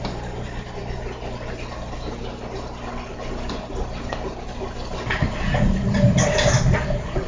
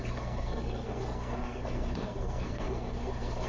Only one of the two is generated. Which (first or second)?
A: second